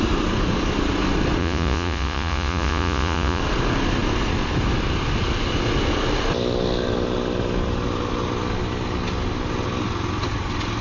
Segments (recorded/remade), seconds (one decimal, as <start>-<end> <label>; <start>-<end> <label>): 0.0-1.4 recorded; 1.4-3.4 remade; 3.4-10.8 recorded